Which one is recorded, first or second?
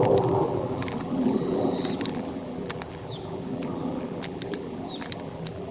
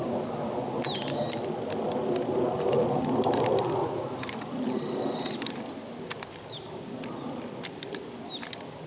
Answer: second